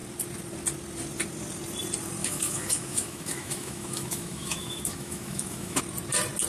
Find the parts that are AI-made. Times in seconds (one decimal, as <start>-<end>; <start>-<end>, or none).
2.2-5.8